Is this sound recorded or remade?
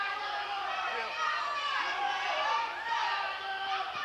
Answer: remade